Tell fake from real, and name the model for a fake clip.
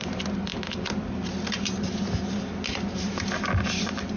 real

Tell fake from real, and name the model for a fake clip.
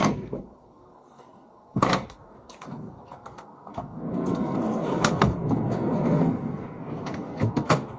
fake, codec, SNAC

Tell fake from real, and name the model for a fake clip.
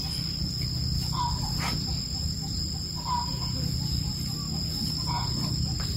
real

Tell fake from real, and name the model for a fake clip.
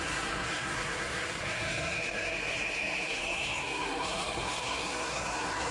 fake, codec, SNAC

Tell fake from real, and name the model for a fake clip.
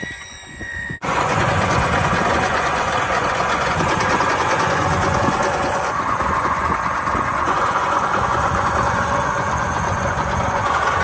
fake, vocoder, Vocos